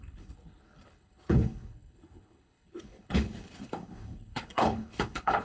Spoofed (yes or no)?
yes